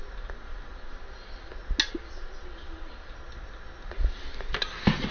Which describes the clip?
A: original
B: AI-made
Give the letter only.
A